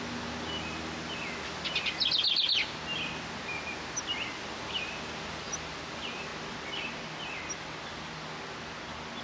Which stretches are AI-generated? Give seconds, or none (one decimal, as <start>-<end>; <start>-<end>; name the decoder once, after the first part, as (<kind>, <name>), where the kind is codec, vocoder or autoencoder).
none